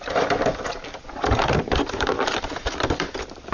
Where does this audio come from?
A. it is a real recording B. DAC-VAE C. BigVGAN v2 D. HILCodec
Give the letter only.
C